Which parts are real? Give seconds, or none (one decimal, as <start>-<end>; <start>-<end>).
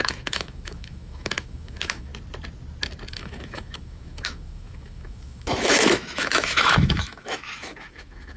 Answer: 2.1-3.1